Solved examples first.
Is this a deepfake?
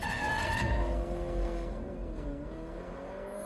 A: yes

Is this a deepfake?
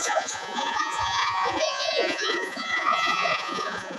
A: yes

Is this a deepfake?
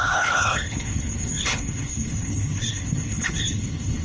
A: yes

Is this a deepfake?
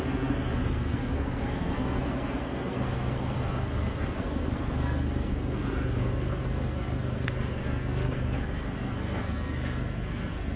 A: yes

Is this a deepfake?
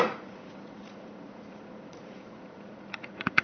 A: yes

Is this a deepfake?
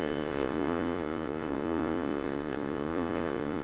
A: yes